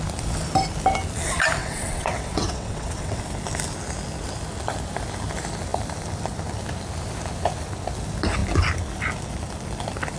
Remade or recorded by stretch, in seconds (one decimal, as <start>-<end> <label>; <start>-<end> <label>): 0.0-1.6 recorded; 1.6-3.2 remade; 3.2-10.2 recorded